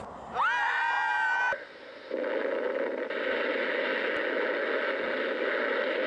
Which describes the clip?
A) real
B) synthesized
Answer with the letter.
A